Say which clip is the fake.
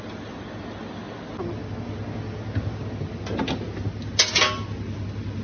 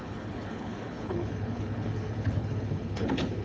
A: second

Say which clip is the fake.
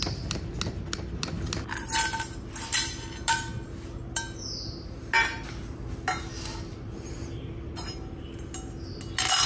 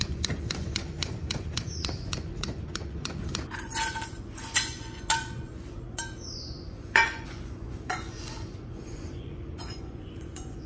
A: second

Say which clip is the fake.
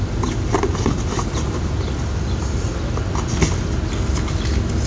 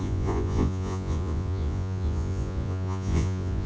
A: second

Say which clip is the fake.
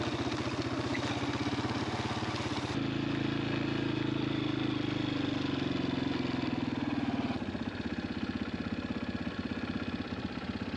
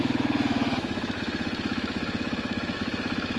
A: second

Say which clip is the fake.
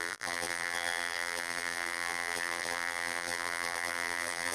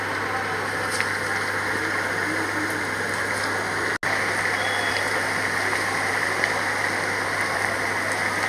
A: first